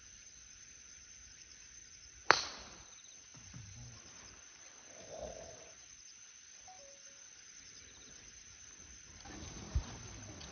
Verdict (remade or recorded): remade